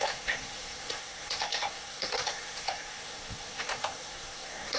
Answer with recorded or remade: remade